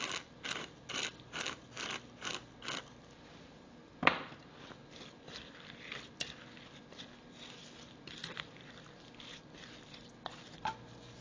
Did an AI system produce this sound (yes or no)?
no